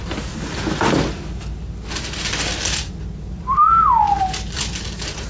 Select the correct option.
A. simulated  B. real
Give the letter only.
B